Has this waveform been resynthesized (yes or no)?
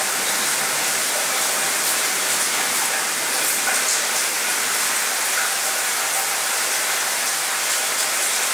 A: no